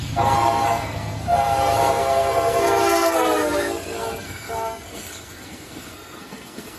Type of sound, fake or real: fake